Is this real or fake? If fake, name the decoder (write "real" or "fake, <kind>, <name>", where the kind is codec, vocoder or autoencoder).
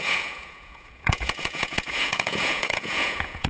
fake, vocoder, Vocos